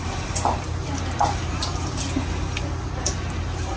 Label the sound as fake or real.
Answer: real